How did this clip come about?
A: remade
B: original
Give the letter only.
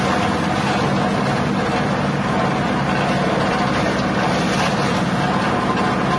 B